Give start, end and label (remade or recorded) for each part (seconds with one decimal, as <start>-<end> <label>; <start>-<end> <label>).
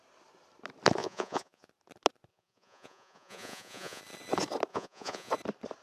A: 0.0-1.0 recorded; 1.0-1.7 remade; 1.7-2.3 recorded; 2.3-4.0 remade; 4.0-4.7 recorded; 4.7-5.3 remade; 5.3-5.8 recorded